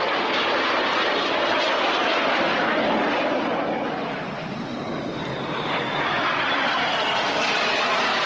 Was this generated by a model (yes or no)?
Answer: no